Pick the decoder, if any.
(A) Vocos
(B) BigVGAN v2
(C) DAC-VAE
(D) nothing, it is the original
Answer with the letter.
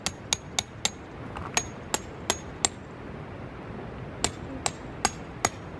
D